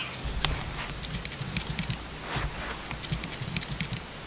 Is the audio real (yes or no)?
yes